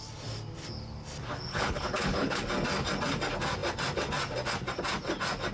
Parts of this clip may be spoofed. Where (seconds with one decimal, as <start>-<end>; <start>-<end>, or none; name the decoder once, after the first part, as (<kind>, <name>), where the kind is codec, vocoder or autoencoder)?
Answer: 1.5-2.4 (codec, HILCodec)